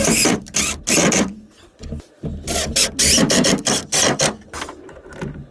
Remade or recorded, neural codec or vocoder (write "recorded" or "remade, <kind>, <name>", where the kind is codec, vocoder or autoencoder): recorded